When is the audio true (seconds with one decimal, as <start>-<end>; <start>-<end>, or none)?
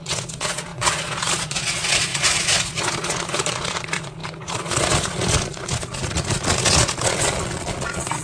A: none